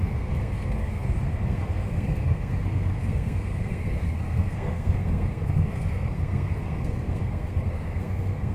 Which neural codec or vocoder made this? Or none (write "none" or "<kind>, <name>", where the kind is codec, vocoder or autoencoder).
codec, SNAC